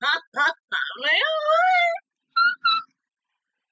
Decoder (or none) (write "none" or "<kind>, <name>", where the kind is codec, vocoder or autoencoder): none